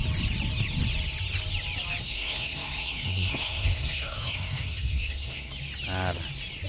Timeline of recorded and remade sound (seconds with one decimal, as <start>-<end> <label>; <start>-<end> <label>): 0.0-2.0 recorded; 2.0-5.5 remade; 5.5-6.7 recorded